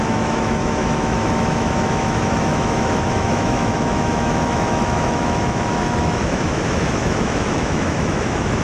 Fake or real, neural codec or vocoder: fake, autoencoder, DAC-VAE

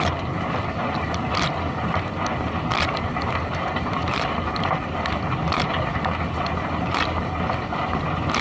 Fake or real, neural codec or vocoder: real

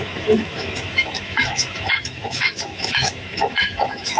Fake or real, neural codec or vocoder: fake, autoencoder, DAC-VAE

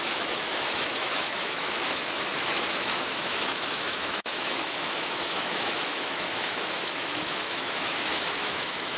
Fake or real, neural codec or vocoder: fake, autoencoder, DAC-VAE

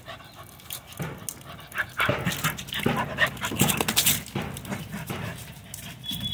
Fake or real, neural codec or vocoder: real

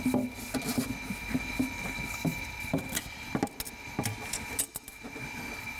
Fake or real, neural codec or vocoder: real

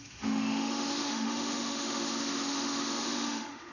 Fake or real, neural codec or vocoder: fake, autoencoder, DAC-VAE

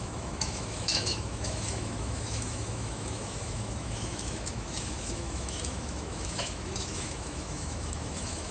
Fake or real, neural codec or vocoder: fake, autoencoder, DAC-VAE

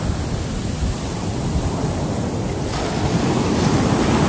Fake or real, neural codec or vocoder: real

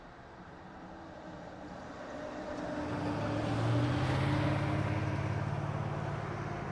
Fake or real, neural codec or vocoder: real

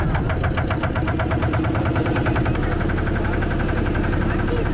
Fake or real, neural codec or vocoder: real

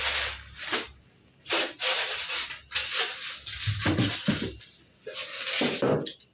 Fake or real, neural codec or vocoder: real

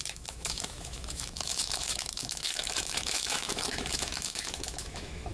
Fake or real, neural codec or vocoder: fake, autoencoder, DAC-VAE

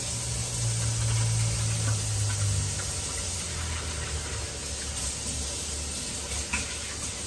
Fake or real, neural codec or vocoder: real